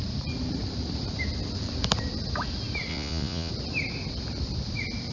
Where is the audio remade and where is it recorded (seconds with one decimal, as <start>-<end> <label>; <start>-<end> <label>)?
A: 0.0-2.9 recorded; 2.9-3.5 remade; 3.5-5.1 recorded